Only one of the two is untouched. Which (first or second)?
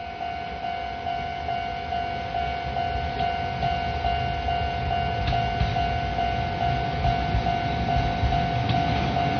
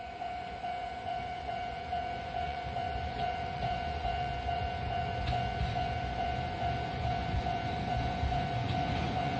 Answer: first